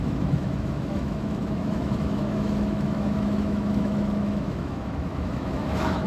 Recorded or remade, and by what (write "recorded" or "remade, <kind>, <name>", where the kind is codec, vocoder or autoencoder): remade, autoencoder, DAC-VAE